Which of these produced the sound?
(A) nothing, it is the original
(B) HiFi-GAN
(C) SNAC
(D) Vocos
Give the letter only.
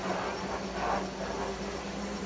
A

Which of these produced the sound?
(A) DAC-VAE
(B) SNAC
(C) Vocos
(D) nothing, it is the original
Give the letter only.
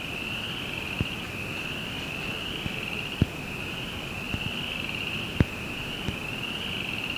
D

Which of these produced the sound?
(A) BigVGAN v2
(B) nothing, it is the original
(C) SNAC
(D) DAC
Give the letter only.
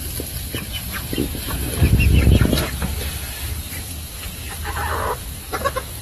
B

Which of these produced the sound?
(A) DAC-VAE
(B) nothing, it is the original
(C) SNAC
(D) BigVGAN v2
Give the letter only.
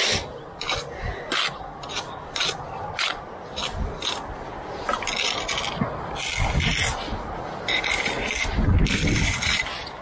B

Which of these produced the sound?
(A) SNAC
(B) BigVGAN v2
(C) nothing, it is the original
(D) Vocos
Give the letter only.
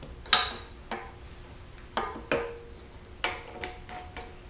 C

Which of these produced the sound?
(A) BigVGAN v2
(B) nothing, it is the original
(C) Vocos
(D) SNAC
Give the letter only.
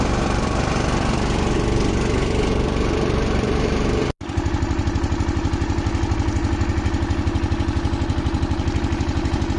B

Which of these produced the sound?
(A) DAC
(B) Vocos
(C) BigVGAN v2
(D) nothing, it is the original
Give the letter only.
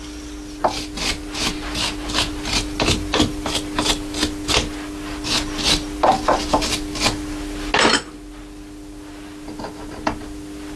D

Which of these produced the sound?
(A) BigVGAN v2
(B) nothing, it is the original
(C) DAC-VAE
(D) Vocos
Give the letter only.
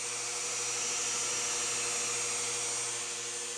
B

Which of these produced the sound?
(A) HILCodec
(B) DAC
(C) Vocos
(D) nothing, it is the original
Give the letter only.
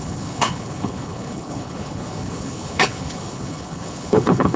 A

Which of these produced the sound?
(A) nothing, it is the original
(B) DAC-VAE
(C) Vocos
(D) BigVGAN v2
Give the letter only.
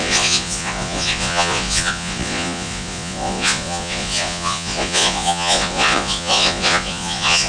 C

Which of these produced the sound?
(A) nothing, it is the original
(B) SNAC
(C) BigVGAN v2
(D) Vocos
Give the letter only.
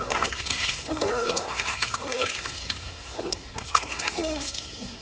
B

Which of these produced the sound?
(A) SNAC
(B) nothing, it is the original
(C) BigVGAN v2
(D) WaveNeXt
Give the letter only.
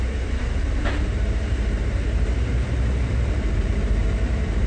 C